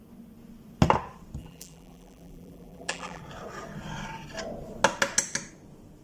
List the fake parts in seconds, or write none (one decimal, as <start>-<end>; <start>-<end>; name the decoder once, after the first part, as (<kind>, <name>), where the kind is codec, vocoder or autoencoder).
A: 1.4-3.2 (vocoder, BigVGAN v2)